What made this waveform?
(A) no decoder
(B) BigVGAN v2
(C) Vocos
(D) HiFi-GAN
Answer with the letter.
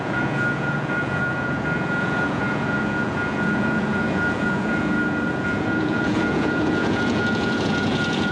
C